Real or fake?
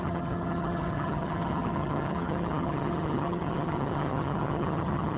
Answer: fake